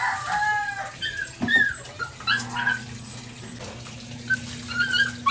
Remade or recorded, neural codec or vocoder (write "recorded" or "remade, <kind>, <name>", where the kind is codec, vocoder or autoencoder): recorded